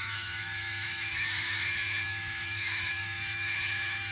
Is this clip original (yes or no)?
no